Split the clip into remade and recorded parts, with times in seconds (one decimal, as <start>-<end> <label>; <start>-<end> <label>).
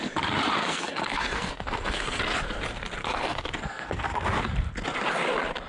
0.0-0.6 recorded; 0.6-2.2 remade; 2.2-3.0 recorded; 3.0-4.3 remade; 4.3-5.7 recorded